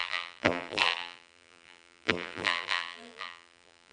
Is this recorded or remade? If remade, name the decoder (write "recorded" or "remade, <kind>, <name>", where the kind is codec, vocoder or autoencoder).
remade, vocoder, BigVGAN v2